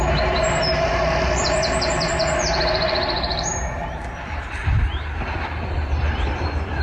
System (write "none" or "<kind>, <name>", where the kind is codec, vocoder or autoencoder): vocoder, BigVGAN v2